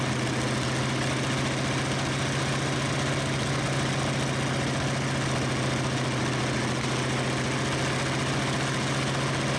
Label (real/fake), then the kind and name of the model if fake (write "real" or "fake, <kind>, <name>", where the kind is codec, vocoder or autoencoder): real